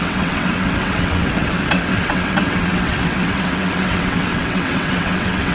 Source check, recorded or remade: remade